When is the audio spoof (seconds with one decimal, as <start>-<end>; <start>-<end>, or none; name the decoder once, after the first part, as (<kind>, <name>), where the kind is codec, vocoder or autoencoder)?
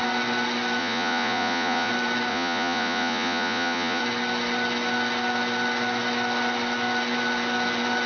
0.8-1.9 (vocoder, Vocos); 2.3-4.0